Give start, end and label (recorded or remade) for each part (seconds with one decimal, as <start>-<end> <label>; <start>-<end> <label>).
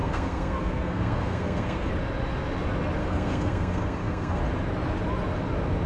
0.0-1.9 remade; 1.9-3.0 recorded; 3.0-4.4 remade; 4.4-5.9 recorded